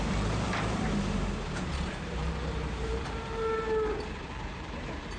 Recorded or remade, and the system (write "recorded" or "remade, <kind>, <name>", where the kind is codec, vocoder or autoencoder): remade, vocoder, BigVGAN v2